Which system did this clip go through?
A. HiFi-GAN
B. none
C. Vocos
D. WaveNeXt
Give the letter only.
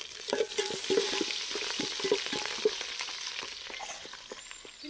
B